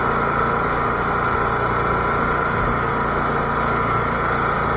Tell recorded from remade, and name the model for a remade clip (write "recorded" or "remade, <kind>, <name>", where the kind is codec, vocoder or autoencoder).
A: recorded